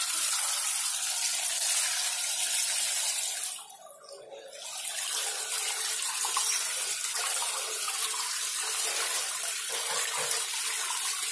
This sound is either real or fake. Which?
real